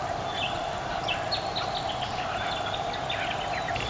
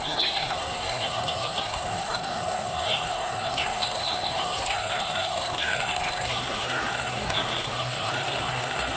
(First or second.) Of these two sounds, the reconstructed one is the second